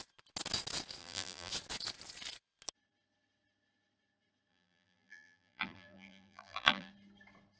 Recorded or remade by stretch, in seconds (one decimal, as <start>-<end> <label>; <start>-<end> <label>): 0.0-1.0 recorded; 1.0-1.5 remade; 1.5-4.5 recorded; 4.5-6.9 remade; 6.9-7.6 recorded